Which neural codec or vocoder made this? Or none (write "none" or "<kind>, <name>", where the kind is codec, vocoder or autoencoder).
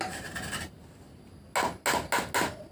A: none